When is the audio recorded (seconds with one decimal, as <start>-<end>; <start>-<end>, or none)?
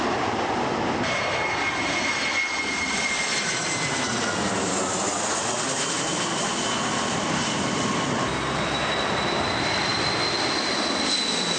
0.0-11.6